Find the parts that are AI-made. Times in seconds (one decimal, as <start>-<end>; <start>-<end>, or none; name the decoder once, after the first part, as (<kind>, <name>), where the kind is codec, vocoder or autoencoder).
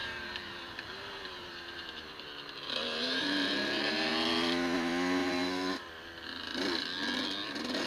0.0-4.1 (vocoder, BigVGAN v2); 5.2-5.9